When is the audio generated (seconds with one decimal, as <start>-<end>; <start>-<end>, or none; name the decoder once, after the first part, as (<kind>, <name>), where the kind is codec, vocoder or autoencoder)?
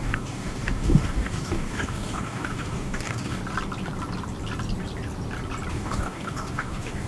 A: 0.0-3.4 (codec, DAC); 5.7-7.1